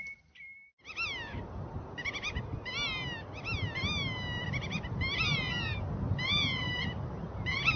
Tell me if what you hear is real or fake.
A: real